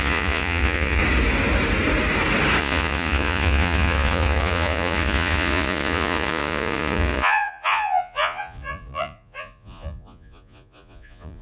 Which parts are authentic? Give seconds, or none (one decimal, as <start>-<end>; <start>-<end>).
1.0-2.6